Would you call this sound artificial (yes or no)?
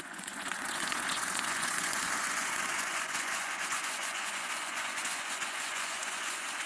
yes